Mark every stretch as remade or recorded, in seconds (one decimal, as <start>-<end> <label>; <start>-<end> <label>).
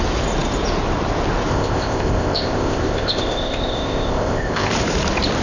0.0-1.5 recorded; 1.5-4.7 remade; 4.7-5.4 recorded